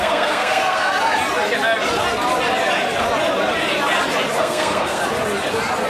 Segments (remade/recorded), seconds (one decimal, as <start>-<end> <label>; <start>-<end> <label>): 0.0-0.9 remade; 0.9-4.4 recorded; 4.4-5.0 remade; 5.0-5.9 recorded